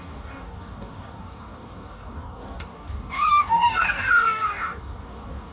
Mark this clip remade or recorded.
remade